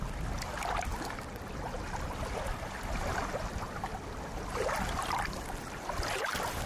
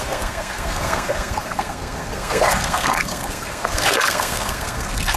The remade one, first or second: second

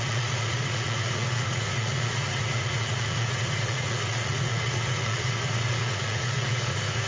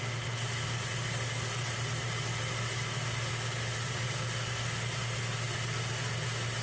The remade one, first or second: first